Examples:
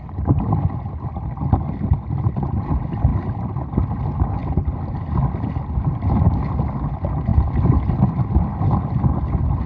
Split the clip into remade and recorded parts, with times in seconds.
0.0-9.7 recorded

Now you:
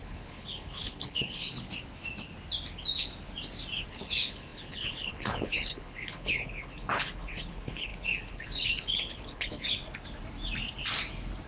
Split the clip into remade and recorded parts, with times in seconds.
0.0-1.5 remade; 1.5-3.9 recorded; 3.9-9.8 remade; 9.8-11.5 recorded

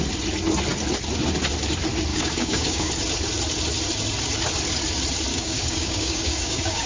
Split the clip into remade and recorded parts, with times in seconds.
0.0-2.1 recorded; 2.1-2.9 remade; 2.9-5.3 recorded; 5.3-6.9 remade

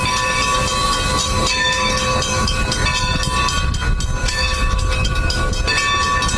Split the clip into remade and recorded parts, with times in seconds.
0.0-1.2 recorded; 1.2-2.6 remade; 2.6-4.2 recorded; 4.2-5.5 remade; 5.5-6.4 recorded

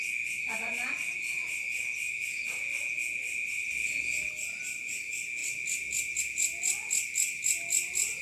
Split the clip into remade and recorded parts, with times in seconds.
0.0-8.2 recorded

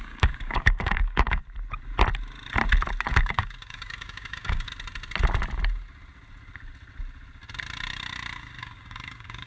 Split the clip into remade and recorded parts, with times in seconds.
0.0-1.4 remade; 1.4-3.1 recorded; 3.1-4.7 remade; 4.7-8.6 recorded; 8.6-9.5 remade

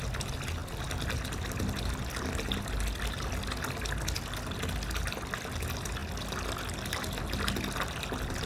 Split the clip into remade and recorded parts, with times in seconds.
0.0-8.5 recorded

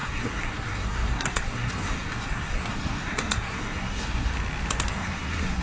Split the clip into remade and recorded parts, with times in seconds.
0.0-4.3 remade; 4.3-4.9 recorded; 4.9-5.6 remade